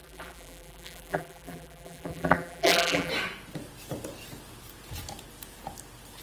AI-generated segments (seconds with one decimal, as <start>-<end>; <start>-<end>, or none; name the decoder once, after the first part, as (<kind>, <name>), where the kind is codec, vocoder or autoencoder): 0.0-3.1 (vocoder, BigVGAN v2)

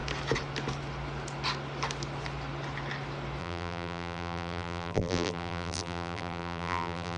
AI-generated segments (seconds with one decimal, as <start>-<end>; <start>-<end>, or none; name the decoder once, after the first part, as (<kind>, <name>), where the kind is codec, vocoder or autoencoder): 3.4-7.2 (vocoder, BigVGAN v2)

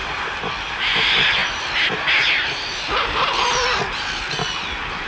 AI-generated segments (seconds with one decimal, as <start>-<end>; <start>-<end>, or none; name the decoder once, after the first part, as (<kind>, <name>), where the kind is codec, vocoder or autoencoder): 0.6-5.1 (vocoder, BigVGAN v2)

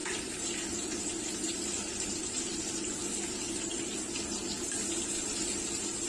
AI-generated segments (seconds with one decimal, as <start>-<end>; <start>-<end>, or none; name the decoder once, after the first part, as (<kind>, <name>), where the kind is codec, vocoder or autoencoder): 0.0-2.1 (vocoder, BigVGAN v2)

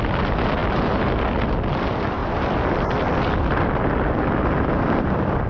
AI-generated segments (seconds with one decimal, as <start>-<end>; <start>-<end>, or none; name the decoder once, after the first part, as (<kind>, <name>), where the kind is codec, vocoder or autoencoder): none

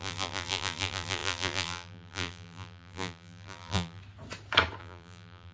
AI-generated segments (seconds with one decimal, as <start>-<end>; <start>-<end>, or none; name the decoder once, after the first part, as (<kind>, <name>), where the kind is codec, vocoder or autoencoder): 0.0-4.0 (vocoder, BigVGAN v2); 4.8-5.5

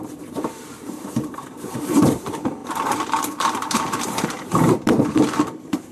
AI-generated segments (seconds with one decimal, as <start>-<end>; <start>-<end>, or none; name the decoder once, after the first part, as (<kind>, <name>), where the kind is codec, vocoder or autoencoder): 0.0-2.6 (vocoder, BigVGAN v2); 3.3-5.9

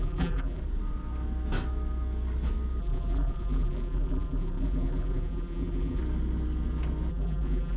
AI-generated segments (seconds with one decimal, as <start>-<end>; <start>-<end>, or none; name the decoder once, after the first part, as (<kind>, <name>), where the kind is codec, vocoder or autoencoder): 0.0-0.6 (vocoder, BigVGAN v2); 2.8-6.0; 7.1-7.8